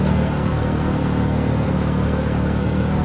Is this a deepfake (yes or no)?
yes